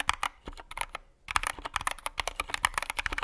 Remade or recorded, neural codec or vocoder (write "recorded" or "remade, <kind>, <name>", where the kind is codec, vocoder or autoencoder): recorded